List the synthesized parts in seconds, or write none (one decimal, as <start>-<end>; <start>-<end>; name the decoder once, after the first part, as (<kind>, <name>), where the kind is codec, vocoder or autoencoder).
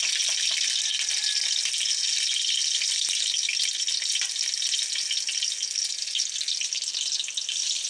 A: none